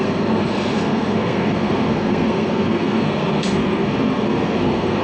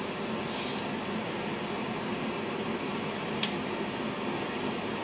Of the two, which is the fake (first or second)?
first